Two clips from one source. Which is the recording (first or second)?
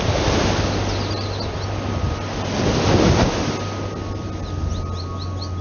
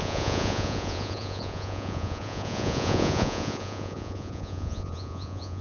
first